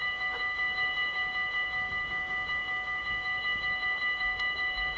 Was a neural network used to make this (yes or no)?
yes